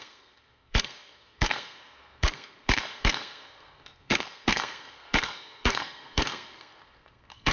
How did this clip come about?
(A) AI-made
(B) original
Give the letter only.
A